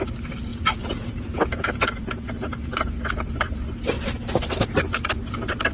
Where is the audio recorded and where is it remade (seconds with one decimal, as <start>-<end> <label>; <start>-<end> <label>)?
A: 0.0-0.5 recorded; 0.5-2.9 remade; 2.9-5.7 recorded